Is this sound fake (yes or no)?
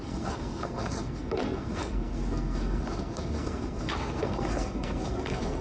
yes